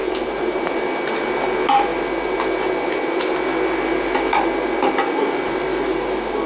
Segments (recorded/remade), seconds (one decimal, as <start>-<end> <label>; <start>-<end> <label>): 0.0-0.7 remade; 0.7-6.5 recorded